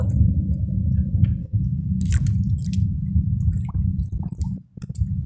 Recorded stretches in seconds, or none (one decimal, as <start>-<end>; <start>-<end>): 0.0-1.4; 2.1-5.3